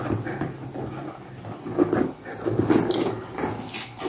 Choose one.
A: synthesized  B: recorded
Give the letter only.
B